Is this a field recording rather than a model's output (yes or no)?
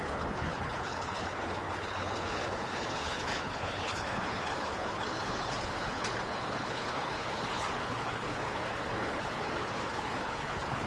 no